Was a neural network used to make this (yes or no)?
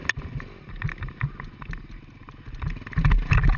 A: no